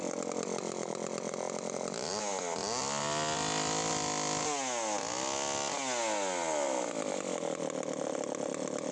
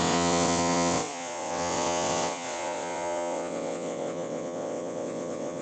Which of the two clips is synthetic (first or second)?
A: second